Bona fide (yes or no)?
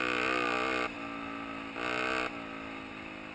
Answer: yes